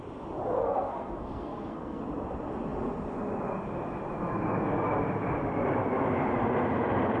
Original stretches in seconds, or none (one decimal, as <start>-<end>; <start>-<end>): 0.0-0.6; 2.0-7.2